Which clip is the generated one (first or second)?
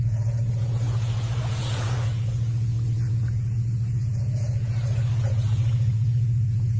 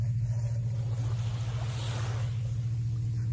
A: first